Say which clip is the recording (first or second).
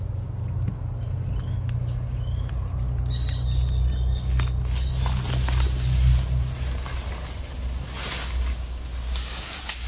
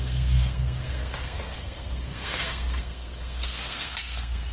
first